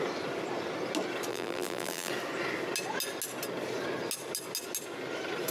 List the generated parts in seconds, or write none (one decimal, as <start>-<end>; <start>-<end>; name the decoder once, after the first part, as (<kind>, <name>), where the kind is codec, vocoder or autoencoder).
1.3-2.1 (vocoder, BigVGAN v2)